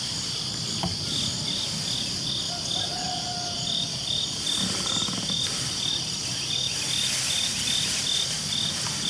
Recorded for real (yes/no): yes